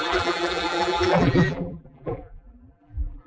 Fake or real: fake